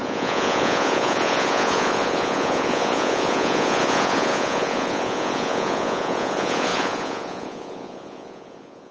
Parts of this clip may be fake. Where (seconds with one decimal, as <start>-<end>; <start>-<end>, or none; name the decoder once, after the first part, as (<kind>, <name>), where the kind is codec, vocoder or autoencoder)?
0.0-8.9 (vocoder, Vocos)

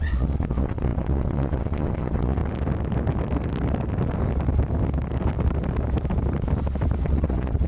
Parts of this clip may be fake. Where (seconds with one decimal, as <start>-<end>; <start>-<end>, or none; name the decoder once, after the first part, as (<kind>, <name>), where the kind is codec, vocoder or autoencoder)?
0.0-2.4 (vocoder, Vocos); 7.0-7.7

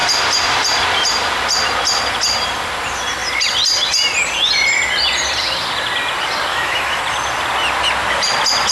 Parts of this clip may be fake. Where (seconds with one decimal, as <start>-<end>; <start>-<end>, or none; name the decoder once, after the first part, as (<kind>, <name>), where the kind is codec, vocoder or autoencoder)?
6.5-7.0 (autoencoder, DAC-VAE)

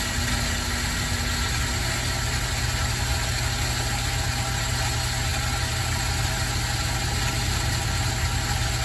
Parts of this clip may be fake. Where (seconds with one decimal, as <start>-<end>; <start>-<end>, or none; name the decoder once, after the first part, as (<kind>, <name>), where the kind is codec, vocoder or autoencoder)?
none

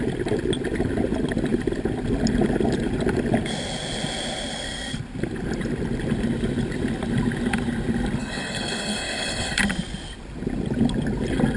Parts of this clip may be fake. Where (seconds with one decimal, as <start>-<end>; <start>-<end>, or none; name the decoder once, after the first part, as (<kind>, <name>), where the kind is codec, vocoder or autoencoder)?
8.2-9.6 (codec, HILCodec)